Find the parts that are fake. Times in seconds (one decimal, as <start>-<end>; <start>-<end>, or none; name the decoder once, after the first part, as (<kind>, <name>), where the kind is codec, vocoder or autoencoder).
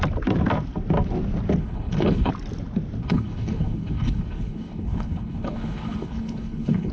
1.6-2.3 (codec, HILCodec); 3.0-6.9